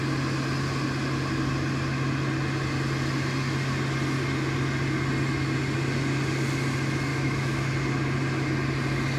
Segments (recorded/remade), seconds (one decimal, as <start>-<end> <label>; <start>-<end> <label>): 0.0-7.1 recorded; 7.1-7.7 remade; 7.7-9.2 recorded